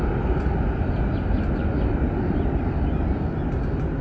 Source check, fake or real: real